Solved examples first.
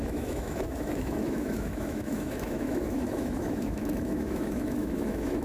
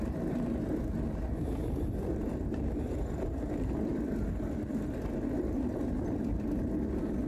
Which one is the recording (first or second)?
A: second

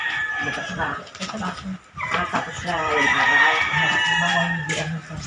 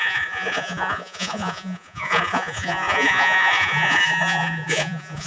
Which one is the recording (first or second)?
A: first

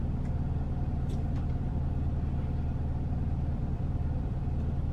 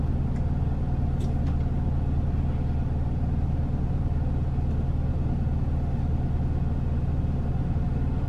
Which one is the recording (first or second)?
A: second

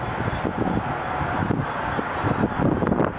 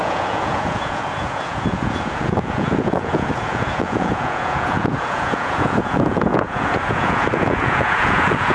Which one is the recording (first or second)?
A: first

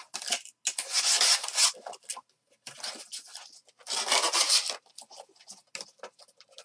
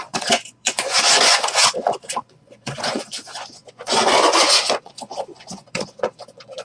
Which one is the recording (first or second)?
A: first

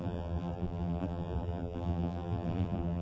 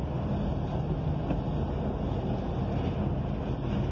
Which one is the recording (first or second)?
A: second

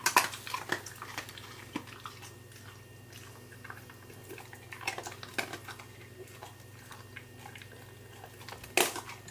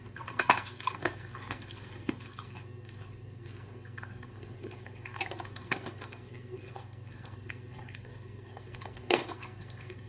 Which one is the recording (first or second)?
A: first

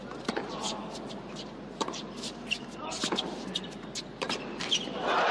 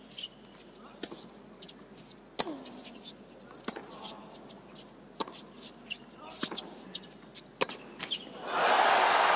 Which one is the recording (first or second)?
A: second